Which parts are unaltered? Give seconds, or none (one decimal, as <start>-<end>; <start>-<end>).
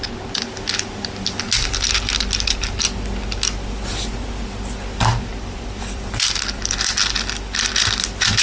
0.0-5.1; 7.0-8.4